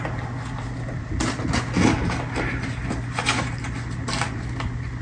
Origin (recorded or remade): recorded